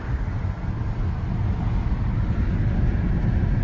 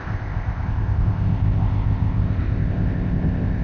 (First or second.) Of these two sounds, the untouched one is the first